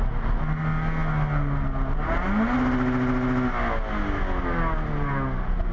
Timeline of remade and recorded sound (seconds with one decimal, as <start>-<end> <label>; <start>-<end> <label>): 0.0-5.7 recorded